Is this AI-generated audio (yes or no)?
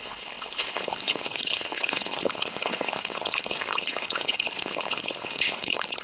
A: yes